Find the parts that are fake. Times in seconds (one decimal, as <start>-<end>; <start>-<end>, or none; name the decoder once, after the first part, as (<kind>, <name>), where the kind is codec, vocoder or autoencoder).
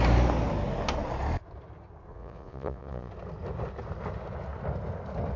2.1-3.1 (vocoder, Vocos)